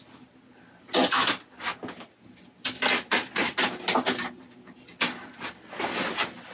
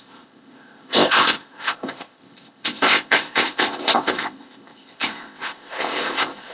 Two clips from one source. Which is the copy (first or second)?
second